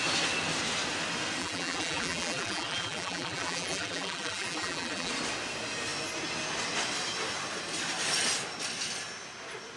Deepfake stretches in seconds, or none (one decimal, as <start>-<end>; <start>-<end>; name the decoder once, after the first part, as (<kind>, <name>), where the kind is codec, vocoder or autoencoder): 1.4-5.1 (vocoder, BigVGAN v2)